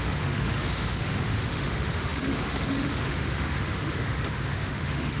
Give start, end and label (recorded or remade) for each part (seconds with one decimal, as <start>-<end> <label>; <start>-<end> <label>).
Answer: 0.0-5.2 remade